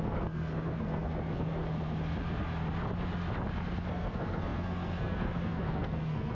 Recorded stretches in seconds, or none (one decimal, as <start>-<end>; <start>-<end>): 1.6-3.9